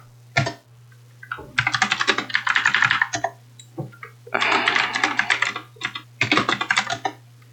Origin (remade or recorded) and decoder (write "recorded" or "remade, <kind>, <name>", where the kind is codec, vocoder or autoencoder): recorded